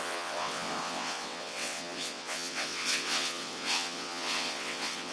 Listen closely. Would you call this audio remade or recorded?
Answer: remade